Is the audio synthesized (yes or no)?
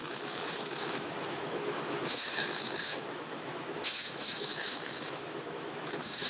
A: yes